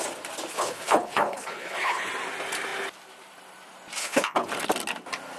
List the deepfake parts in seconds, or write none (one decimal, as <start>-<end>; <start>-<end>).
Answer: 0.5-2.1; 4.0-4.5